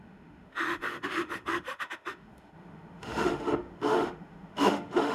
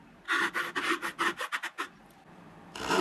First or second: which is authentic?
second